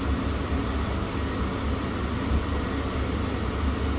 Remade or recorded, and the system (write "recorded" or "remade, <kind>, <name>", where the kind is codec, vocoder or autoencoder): recorded